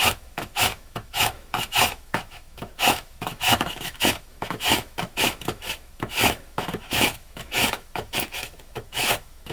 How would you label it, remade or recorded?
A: remade